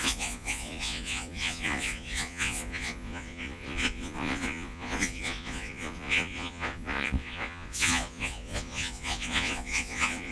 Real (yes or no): no